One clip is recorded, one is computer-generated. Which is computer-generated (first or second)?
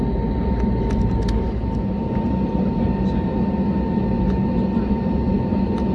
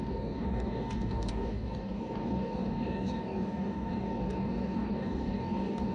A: second